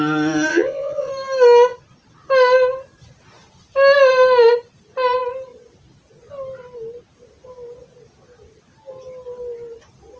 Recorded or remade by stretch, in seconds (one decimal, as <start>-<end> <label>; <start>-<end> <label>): 0.0-0.5 recorded; 0.5-1.1 remade; 1.1-10.2 recorded